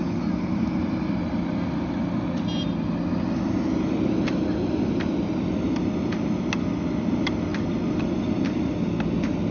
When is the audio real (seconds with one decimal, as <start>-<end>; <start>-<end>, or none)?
0.0-9.5